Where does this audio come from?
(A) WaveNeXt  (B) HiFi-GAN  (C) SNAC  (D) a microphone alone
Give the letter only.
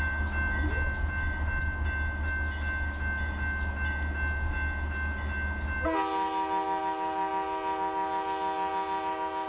D